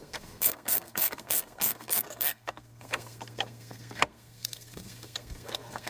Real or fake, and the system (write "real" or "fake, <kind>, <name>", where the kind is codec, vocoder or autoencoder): fake, codec, SNAC